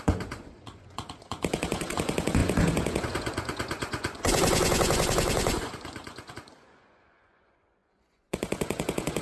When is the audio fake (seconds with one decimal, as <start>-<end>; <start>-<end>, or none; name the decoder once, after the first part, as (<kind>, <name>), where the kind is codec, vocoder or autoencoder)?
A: 0.0-9.2 (vocoder, Vocos)